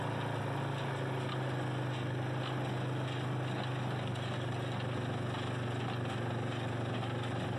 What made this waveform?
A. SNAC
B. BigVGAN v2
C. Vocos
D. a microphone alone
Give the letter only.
D